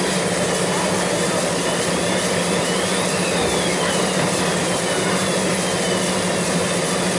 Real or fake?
real